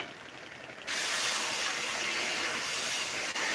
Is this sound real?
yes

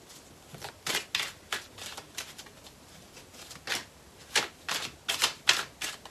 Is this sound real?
yes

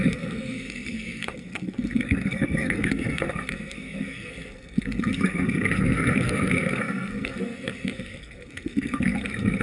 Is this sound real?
no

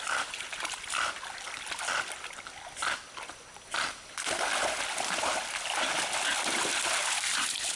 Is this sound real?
yes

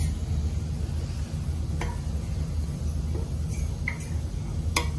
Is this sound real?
yes